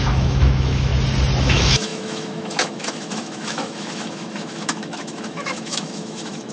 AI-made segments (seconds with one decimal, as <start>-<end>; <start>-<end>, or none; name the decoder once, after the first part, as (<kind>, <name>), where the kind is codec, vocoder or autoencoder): 0.0-0.9 (autoencoder, DAC-VAE); 1.4-6.5